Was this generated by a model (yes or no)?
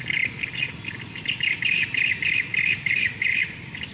no